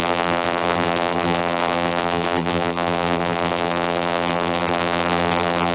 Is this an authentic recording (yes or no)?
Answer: no